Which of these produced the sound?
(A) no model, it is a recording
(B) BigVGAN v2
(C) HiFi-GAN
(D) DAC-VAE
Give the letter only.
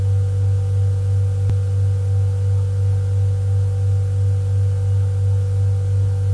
A